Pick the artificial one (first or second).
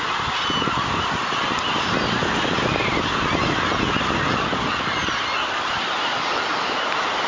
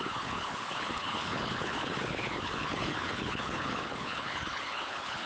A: second